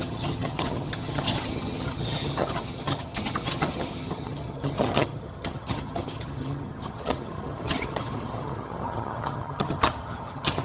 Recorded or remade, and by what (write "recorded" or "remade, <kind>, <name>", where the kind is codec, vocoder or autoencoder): remade, vocoder, HiFi-GAN